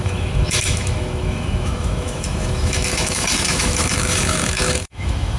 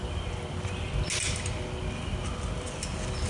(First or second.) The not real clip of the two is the first